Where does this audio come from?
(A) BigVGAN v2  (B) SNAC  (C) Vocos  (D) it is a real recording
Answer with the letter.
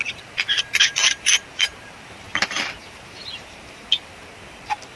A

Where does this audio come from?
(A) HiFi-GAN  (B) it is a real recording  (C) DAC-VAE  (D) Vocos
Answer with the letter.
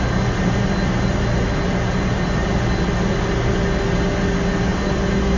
B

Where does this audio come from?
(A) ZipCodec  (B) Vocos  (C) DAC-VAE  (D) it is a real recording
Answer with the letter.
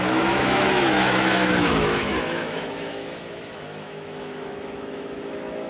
C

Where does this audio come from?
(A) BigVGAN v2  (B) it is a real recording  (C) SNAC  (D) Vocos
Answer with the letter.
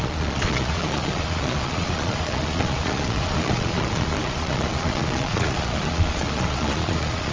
D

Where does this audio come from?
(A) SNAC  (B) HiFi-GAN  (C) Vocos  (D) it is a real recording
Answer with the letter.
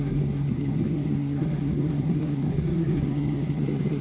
A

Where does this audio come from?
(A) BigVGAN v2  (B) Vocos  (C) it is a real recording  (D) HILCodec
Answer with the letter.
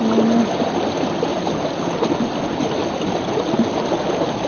C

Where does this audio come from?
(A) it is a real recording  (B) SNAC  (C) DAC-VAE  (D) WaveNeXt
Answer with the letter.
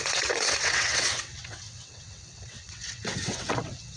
D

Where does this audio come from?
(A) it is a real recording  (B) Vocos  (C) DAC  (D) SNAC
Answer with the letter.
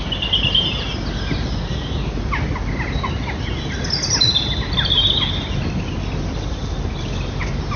A